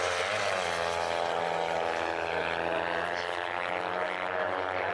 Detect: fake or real real